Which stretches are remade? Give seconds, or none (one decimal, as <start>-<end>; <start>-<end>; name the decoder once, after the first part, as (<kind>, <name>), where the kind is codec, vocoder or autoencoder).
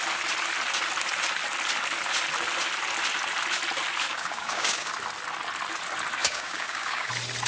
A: 4.1-4.9 (codec, DAC); 6.2-7.1